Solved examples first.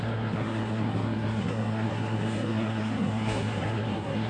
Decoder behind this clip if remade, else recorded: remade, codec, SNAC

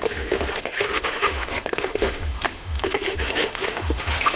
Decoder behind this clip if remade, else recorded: remade, autoencoder, DAC-VAE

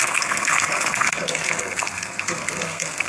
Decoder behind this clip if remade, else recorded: remade, codec, SNAC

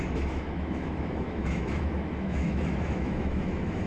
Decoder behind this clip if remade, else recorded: remade, autoencoder, DAC-VAE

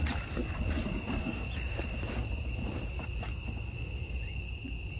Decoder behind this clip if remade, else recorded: recorded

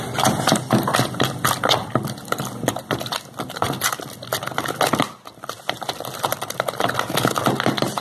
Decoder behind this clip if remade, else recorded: recorded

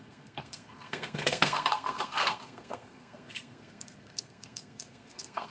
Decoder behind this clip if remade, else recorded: remade, codec, SNAC